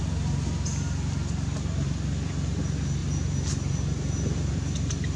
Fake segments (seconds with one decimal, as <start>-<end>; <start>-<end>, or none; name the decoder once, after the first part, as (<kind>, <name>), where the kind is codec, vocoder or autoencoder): none